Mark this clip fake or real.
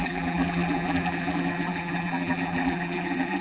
fake